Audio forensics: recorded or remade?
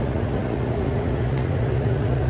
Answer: remade